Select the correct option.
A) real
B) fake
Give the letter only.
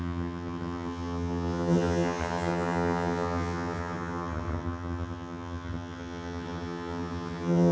B